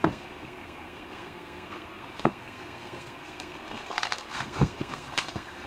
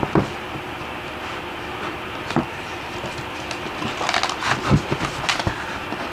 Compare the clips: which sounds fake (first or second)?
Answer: first